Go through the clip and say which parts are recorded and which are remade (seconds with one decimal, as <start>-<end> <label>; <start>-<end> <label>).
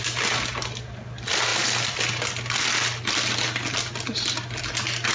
0.0-5.1 recorded